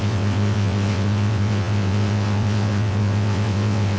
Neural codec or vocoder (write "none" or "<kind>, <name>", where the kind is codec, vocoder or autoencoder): vocoder, WaveNeXt